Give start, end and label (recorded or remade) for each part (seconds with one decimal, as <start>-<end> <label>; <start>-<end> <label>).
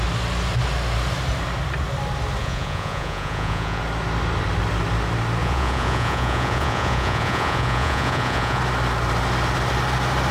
0.0-2.4 recorded; 2.4-3.8 remade; 3.8-5.4 recorded; 5.4-8.6 remade; 8.6-10.3 recorded